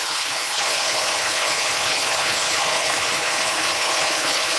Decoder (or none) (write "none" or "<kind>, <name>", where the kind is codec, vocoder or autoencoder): codec, HILCodec